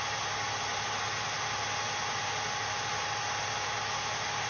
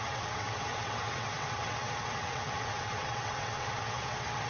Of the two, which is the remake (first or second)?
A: second